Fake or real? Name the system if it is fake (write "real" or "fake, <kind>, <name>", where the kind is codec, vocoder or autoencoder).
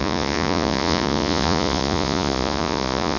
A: fake, vocoder, Vocos